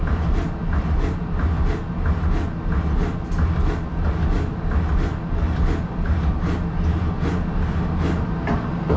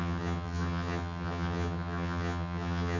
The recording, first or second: first